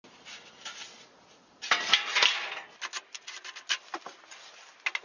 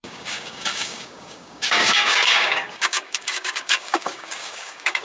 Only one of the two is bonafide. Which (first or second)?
first